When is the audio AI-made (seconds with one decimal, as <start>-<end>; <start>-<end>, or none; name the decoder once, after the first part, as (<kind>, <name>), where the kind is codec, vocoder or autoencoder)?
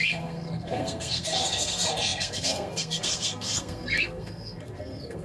0.0-5.2 (codec, SNAC)